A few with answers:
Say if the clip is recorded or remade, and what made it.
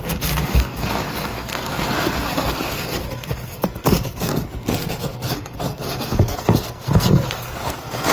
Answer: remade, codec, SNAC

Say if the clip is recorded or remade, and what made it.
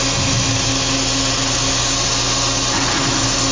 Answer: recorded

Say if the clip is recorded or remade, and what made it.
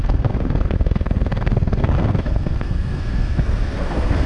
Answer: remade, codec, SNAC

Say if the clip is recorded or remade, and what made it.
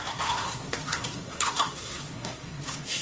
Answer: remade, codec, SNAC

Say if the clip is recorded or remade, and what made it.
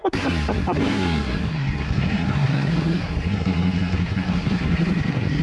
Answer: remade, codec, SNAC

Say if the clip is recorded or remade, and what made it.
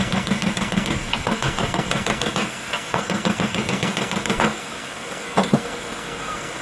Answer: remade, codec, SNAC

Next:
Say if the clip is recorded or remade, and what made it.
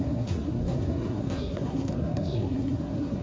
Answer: remade, codec, SNAC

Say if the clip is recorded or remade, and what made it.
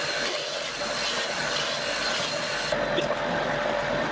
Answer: recorded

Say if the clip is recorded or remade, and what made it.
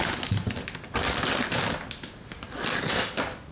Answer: recorded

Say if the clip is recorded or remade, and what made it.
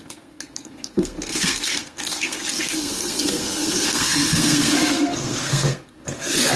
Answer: remade, codec, SNAC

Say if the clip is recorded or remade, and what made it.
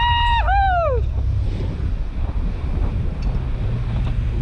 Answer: recorded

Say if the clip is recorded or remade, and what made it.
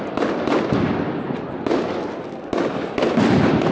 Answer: recorded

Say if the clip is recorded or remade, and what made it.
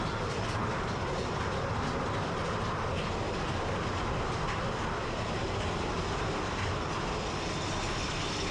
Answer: recorded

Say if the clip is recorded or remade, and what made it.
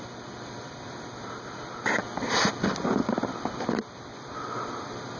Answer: recorded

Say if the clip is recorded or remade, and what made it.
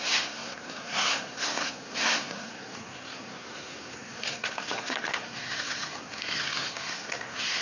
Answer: remade, codec, SNAC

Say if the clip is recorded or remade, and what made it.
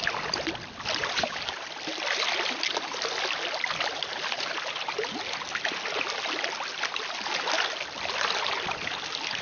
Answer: recorded